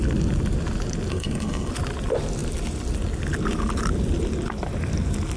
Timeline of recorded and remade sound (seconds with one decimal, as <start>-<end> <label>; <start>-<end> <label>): 0.0-1.1 recorded; 1.1-1.7 remade; 1.7-5.4 recorded